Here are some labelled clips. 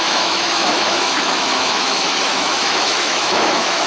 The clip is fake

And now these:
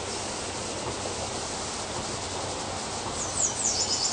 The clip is real